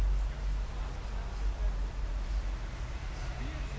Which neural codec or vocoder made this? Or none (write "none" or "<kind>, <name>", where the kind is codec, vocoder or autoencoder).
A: none